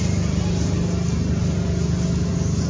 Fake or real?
real